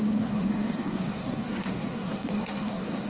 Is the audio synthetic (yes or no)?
yes